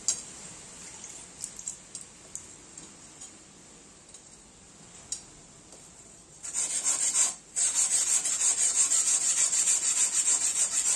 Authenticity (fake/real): real